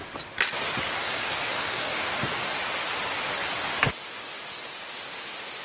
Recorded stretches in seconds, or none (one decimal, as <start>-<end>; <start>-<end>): 0.0-1.0; 2.3-5.6